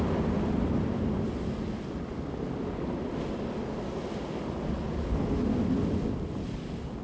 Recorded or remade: recorded